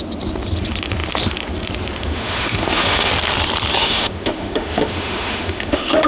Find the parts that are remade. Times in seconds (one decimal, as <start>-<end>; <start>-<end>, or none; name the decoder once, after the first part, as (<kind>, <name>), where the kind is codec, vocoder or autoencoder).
2.0-3.1 (autoencoder, DAC-VAE); 3.8-6.1